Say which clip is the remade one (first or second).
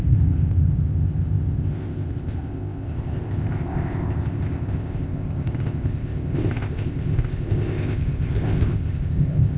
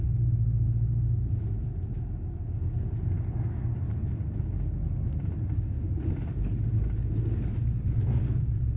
first